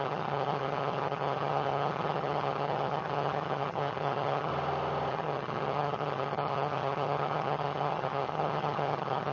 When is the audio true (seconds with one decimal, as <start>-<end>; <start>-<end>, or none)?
4.5-5.1